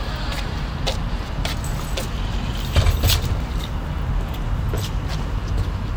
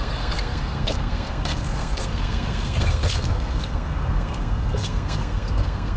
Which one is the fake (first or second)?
second